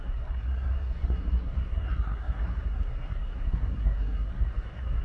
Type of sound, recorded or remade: remade